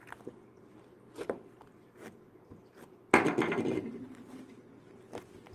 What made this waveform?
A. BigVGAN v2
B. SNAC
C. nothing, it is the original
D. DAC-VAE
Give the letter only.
C